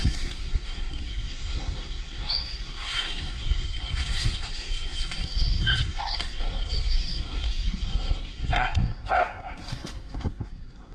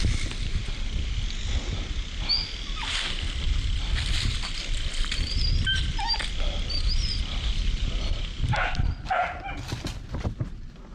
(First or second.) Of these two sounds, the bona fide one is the second